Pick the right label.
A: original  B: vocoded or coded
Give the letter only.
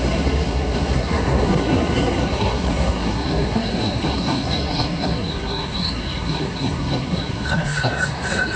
B